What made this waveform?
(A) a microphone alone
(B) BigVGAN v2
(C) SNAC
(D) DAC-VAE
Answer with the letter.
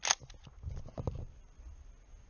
A